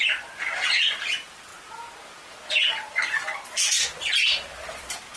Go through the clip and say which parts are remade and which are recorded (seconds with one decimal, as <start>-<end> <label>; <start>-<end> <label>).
0.0-1.5 remade; 1.5-4.6 recorded; 4.6-5.2 remade